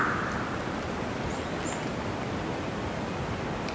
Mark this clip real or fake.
real